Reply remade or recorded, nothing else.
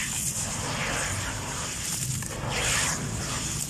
recorded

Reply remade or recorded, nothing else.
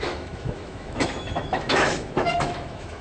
remade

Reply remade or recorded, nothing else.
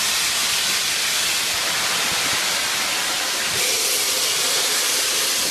recorded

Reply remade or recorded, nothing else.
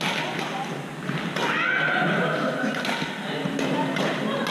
recorded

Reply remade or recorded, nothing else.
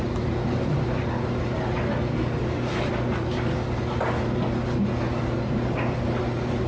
recorded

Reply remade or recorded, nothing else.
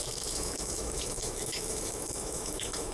remade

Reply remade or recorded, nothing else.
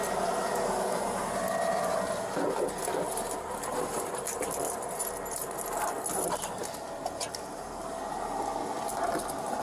recorded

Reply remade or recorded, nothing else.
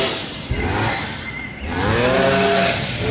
recorded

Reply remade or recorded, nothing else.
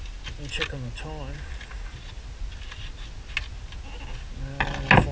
recorded